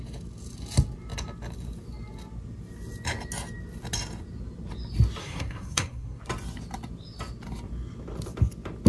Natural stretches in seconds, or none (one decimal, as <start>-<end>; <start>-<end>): 0.0-5.2; 6.2-8.9

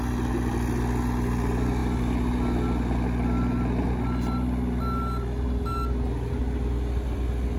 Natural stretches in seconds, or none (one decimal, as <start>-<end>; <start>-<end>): 0.0-7.6

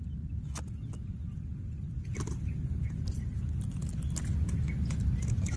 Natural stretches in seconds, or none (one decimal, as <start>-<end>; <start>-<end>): 0.0-5.6

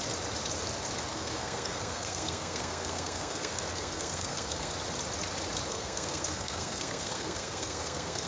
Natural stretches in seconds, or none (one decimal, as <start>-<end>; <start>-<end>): 0.0-1.1; 4.7-5.7

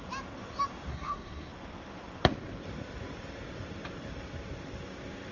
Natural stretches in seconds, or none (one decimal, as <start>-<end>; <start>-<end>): 0.0-0.9; 1.5-5.3